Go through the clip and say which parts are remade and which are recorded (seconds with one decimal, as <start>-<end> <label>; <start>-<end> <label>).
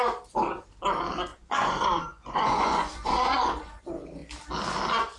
0.0-1.3 recorded; 1.3-3.8 remade; 3.8-5.2 recorded